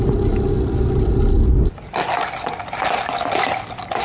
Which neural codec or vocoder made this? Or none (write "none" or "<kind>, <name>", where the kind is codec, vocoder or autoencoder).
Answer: none